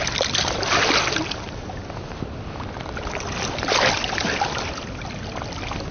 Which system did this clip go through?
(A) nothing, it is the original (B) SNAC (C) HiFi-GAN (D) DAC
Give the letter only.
A